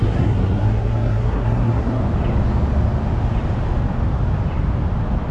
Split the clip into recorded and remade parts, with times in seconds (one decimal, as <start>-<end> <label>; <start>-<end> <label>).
0.0-2.0 remade; 2.0-5.3 recorded